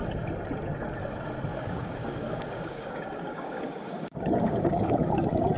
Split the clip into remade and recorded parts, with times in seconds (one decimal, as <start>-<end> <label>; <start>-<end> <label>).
0.0-1.5 recorded; 1.5-4.9 remade; 4.9-5.6 recorded